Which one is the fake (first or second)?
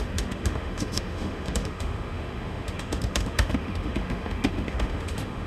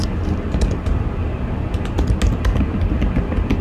first